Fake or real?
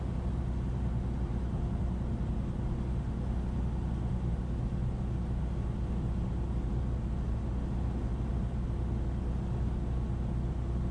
real